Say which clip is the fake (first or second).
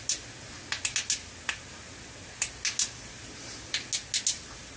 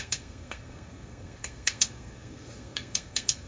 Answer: second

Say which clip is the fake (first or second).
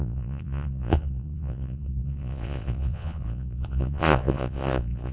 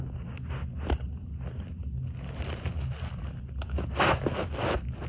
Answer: first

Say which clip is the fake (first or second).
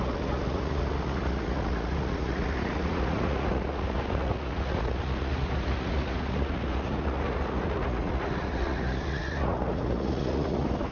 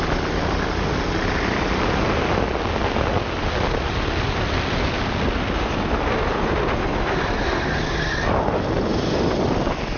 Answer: first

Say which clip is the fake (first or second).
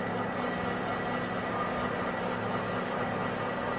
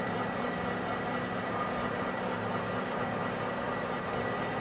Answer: second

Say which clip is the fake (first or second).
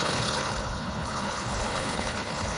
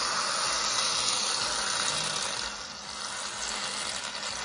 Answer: first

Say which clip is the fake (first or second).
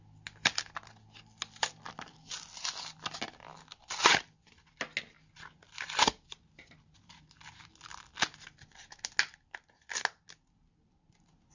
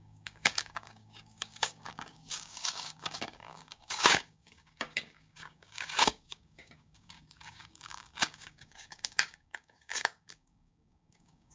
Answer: second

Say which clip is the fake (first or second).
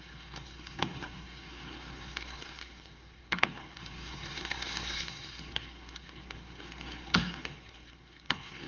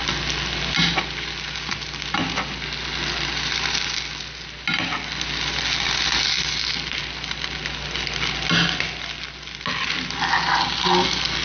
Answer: first